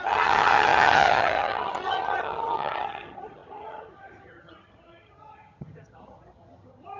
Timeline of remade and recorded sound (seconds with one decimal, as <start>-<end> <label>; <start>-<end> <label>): 0.0-7.0 remade